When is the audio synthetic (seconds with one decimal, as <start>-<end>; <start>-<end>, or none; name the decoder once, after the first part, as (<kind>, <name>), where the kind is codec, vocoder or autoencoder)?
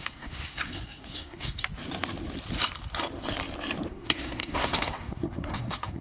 0.0-1.6 (codec, SNAC); 3.9-6.0